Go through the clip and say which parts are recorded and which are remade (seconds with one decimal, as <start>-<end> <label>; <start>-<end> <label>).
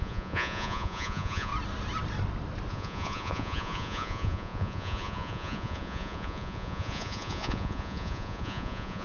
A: 0.0-1.5 remade; 1.5-2.7 recorded; 2.7-9.0 remade